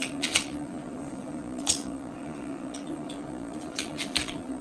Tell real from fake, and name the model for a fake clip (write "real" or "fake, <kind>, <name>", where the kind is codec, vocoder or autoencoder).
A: fake, vocoder, Vocos